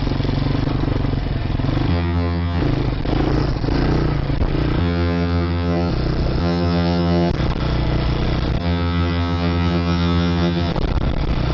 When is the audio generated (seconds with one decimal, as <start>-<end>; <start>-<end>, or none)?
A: 1.9-2.6; 4.8-5.9; 6.4-7.3; 8.6-10.7